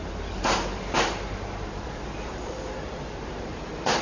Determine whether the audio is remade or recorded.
remade